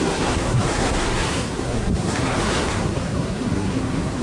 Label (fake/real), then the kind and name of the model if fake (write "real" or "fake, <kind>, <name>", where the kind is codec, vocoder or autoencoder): fake, codec, SNAC